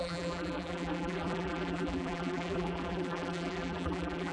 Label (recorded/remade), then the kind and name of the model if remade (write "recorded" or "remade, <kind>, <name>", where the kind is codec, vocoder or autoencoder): remade, vocoder, BigVGAN v2